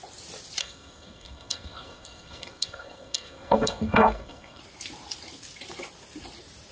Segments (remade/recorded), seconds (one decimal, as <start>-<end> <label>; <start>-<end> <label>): 0.0-0.6 recorded; 0.6-4.6 remade; 4.6-6.7 recorded